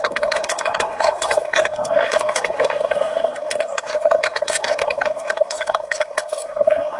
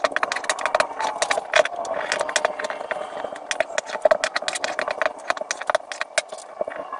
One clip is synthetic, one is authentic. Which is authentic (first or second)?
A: second